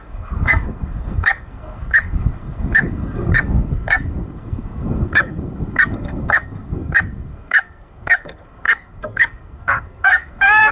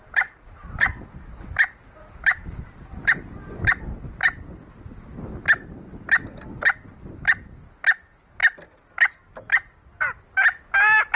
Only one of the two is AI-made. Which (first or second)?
first